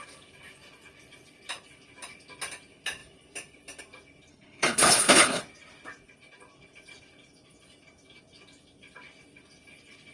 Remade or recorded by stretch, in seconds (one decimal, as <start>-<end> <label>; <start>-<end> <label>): 0.0-4.3 recorded; 4.3-5.4 remade; 5.4-10.1 recorded